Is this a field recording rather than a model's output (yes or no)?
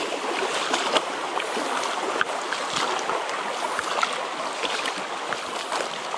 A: yes